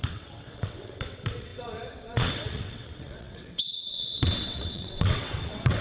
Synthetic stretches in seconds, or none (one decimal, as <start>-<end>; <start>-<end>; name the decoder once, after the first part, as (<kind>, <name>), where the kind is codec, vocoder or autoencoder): 0.0-5.8 (vocoder, WaveNeXt)